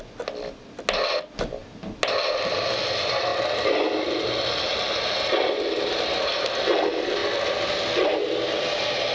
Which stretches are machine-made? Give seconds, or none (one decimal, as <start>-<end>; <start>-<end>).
none